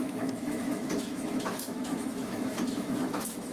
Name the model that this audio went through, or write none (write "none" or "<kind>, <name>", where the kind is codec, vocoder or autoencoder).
autoencoder, DAC-VAE